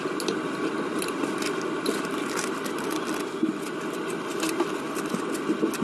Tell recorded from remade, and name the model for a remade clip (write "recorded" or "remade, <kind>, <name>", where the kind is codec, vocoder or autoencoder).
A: recorded